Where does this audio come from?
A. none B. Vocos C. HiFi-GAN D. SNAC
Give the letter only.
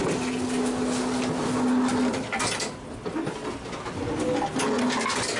A